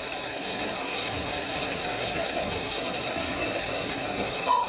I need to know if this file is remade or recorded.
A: remade